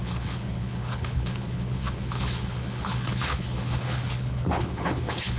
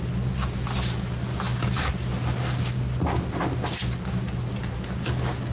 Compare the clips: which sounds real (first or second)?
second